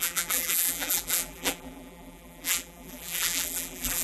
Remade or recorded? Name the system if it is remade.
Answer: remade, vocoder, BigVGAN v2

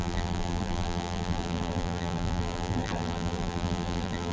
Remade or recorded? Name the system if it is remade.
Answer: remade, vocoder, BigVGAN v2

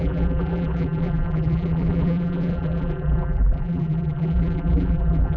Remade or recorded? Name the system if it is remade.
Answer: remade, vocoder, BigVGAN v2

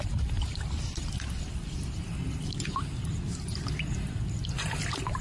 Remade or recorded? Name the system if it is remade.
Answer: remade, vocoder, BigVGAN v2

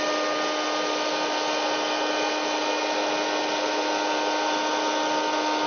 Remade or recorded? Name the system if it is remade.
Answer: recorded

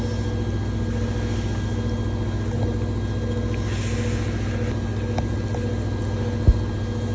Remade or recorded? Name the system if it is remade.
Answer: recorded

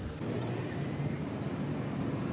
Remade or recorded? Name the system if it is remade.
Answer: recorded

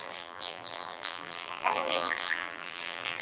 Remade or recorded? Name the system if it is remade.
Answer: remade, vocoder, BigVGAN v2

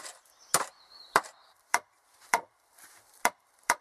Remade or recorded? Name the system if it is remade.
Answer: remade, vocoder, BigVGAN v2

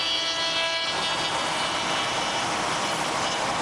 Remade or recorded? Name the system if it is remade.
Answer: recorded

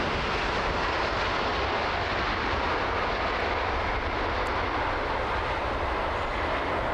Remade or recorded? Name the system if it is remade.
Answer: recorded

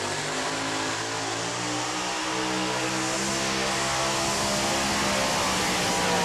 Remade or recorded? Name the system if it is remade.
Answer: recorded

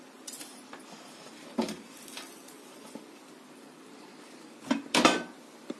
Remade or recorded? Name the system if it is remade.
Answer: remade, vocoder, BigVGAN v2